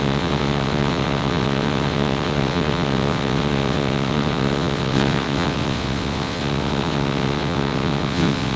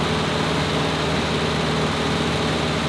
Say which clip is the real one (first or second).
second